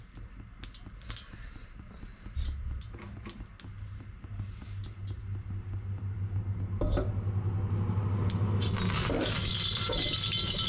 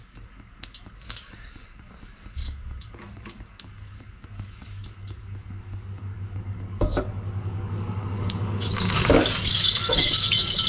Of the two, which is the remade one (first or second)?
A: second